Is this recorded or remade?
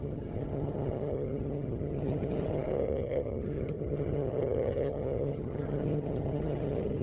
remade